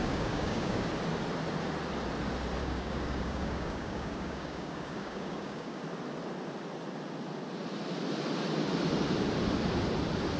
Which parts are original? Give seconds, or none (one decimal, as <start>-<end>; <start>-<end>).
0.9-2.6; 5.8-10.4